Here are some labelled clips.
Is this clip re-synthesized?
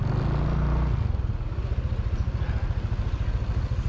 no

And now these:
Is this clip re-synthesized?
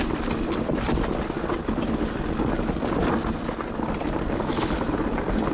no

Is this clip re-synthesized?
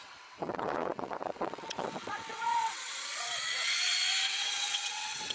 yes